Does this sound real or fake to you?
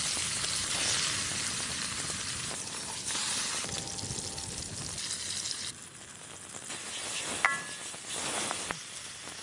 real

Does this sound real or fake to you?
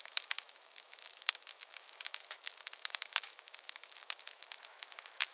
fake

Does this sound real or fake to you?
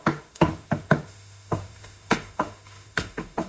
fake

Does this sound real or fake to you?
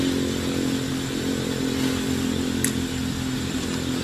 real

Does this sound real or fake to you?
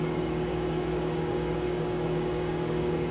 fake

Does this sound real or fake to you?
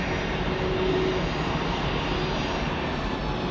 real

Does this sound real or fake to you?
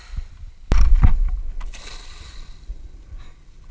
real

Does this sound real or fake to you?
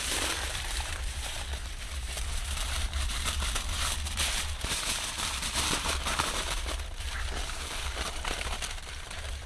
fake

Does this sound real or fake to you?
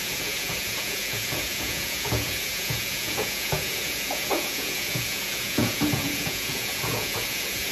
fake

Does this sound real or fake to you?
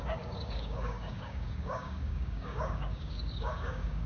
fake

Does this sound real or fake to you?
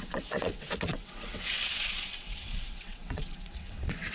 fake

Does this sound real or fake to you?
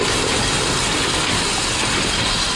real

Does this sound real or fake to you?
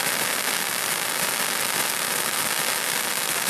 real